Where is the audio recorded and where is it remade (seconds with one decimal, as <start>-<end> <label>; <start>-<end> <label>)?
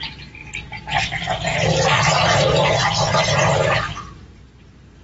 0.0-0.4 remade; 0.4-1.0 recorded; 1.0-2.6 remade; 2.6-3.2 recorded; 3.2-5.0 remade